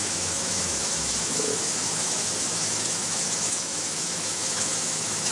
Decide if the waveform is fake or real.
fake